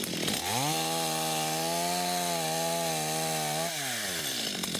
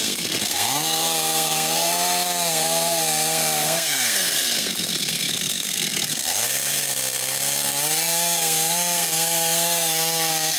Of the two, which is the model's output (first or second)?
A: second